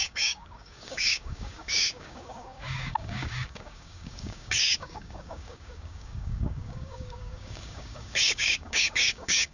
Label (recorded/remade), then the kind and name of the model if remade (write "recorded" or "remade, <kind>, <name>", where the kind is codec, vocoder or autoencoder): remade, codec, DAC